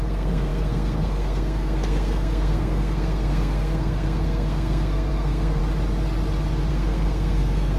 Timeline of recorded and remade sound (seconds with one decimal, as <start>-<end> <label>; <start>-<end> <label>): 0.0-5.6 remade; 5.6-6.7 recorded; 6.7-7.8 remade

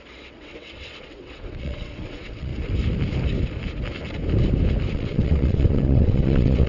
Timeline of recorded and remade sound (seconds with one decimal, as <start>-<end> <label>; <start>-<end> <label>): 0.0-2.5 remade; 2.5-4.9 recorded; 4.9-6.7 remade

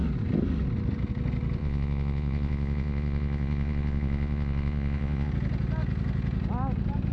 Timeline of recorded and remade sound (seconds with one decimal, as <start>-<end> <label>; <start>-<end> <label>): 0.0-1.6 recorded; 1.6-5.3 remade; 5.3-7.1 recorded

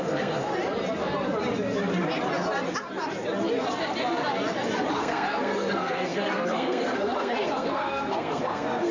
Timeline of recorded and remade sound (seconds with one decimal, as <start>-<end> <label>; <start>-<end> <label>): 0.0-0.5 remade; 0.5-4.9 recorded; 4.9-8.9 remade

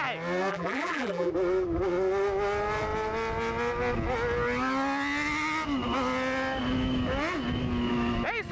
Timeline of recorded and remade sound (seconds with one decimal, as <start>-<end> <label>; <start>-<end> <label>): 0.0-0.5 recorded; 0.5-1.3 remade; 1.3-8.5 recorded